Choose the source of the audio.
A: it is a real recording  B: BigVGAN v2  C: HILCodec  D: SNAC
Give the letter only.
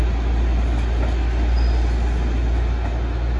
A